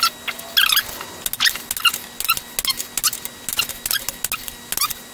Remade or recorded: recorded